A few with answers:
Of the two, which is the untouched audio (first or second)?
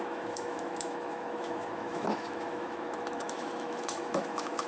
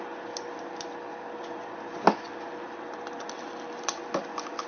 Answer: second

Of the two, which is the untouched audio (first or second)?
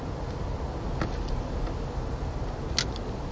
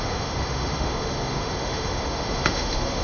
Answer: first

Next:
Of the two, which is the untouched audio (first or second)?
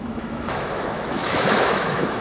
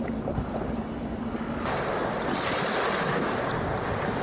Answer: second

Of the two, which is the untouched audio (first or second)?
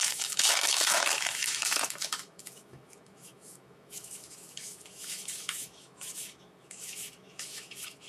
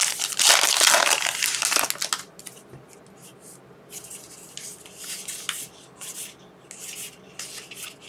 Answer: second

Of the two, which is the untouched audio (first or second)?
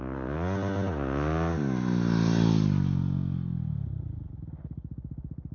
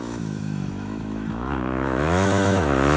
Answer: first